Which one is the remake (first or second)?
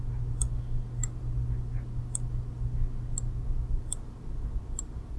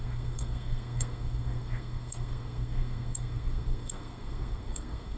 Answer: second